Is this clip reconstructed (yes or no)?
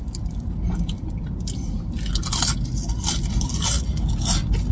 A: no